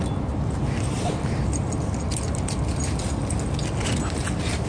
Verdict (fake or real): real